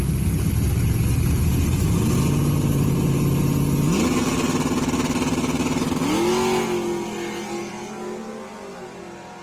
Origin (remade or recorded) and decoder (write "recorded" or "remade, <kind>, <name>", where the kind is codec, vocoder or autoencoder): recorded